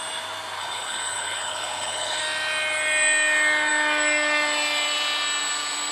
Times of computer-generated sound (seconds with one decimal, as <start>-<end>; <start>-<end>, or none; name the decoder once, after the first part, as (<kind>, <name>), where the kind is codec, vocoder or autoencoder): 0.6-2.2 (codec, HILCodec)